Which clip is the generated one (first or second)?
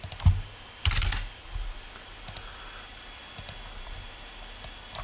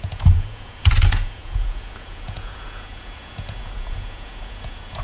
second